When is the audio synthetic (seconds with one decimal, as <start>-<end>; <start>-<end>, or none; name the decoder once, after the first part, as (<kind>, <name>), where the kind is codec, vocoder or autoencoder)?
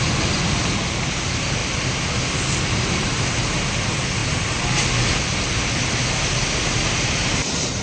none